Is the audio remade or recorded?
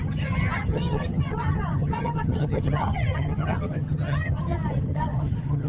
remade